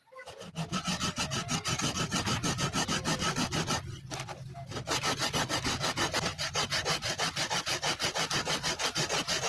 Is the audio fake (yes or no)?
no